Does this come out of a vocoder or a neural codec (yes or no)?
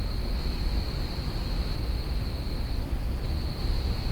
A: no